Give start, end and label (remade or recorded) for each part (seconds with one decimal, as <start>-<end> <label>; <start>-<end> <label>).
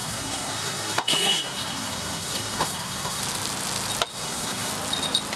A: 0.0-3.2 remade; 3.2-4.1 recorded; 4.1-4.7 remade; 4.7-5.4 recorded